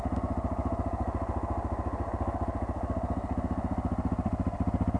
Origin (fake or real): real